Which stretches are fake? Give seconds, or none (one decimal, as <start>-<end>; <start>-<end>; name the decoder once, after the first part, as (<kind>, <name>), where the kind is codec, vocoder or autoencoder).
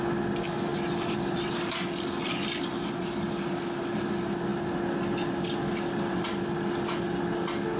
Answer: none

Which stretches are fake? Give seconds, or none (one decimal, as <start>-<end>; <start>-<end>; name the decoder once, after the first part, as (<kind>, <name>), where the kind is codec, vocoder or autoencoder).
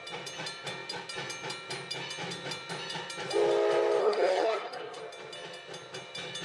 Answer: 4.0-5.0 (codec, SNAC)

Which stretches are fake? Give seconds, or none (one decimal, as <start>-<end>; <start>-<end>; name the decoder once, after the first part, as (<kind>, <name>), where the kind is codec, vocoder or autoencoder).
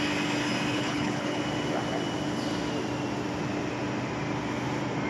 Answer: 0.7-1.4 (codec, HILCodec)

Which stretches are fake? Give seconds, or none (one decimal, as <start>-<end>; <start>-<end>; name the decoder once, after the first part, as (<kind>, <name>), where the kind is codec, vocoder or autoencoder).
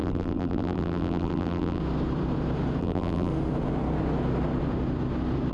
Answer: 0.0-1.8 (vocoder, BigVGAN v2); 2.8-3.3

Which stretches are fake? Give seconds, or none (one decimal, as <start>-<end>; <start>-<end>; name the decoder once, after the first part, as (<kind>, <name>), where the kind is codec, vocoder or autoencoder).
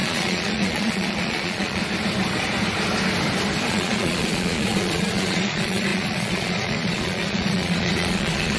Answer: 0.0-1.8 (vocoder, Vocos); 3.7-8.6